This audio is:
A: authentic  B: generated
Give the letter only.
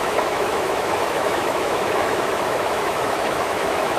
B